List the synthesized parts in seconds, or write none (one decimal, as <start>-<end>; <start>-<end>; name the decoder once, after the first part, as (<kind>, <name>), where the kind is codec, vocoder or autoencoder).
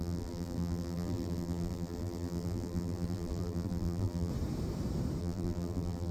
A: 0.0-4.3 (vocoder, BigVGAN v2); 5.2-6.1